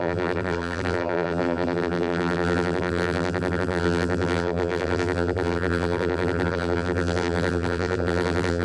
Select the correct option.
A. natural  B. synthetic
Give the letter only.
B